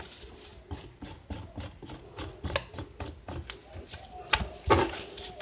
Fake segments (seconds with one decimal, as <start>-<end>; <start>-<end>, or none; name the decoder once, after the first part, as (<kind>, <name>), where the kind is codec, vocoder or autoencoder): none